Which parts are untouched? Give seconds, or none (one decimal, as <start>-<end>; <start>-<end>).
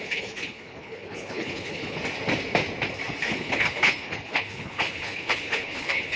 2.0-3.2